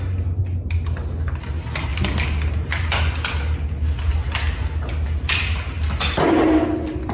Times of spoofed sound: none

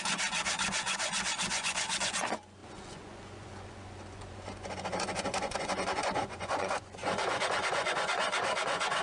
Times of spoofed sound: 0.0-9.0 (vocoder, Vocos)

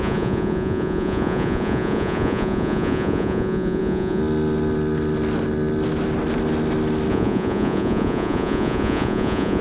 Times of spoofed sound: 0.0-4.2 (vocoder, Vocos); 7.1-9.6

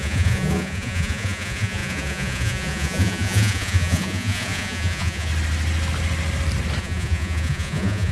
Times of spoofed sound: 0.0-5.3 (vocoder, Vocos); 6.8-8.1

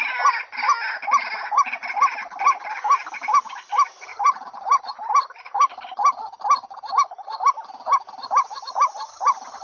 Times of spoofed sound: none

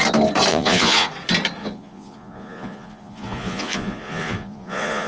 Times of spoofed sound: 0.5-1.1 (vocoder, Vocos); 1.6-5.1